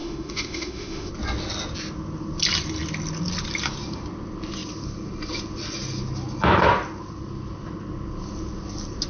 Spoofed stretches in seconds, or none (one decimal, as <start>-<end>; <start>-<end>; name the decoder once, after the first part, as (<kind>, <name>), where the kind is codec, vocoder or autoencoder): 0.0-1.1 (autoencoder, DAC-VAE)